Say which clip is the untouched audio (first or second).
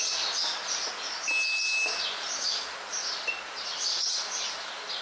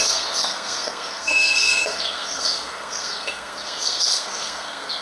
first